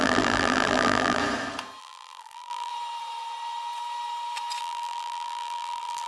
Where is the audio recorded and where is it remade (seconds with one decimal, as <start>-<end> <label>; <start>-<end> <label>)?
0.0-1.2 remade; 1.2-1.8 recorded; 1.8-2.7 remade; 2.7-4.6 recorded; 4.6-6.1 remade